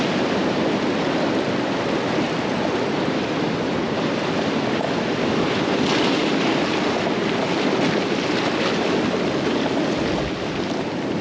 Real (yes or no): yes